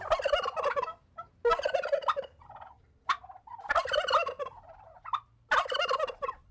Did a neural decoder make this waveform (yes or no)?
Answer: no